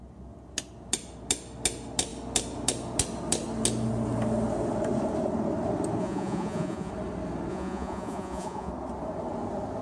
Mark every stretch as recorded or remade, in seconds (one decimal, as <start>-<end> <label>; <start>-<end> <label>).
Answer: 0.0-6.0 recorded; 6.0-6.9 remade; 6.9-7.5 recorded; 7.5-8.7 remade; 8.7-9.8 recorded